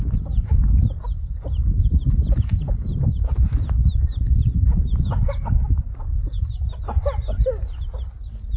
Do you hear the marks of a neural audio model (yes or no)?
no